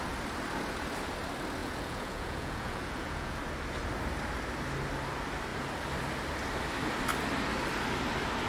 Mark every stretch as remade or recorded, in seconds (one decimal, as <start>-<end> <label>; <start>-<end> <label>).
0.0-1.6 recorded; 1.6-3.4 remade; 3.4-8.5 recorded